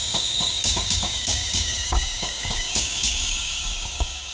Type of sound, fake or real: fake